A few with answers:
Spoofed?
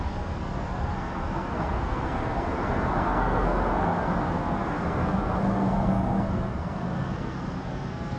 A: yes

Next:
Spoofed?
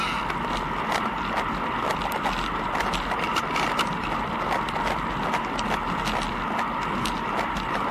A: no